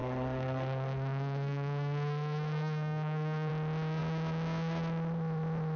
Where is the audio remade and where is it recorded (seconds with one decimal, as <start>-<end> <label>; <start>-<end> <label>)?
0.0-3.5 remade; 3.5-5.8 recorded